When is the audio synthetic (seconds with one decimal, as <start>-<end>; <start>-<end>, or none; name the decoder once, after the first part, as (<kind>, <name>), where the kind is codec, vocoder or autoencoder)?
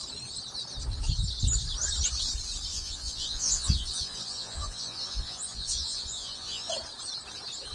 2.7-6.7 (vocoder, Vocos)